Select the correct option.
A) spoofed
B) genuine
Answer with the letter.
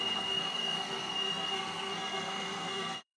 A